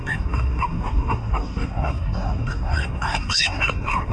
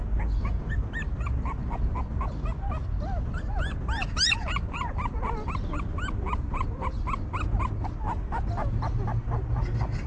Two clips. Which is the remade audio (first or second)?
first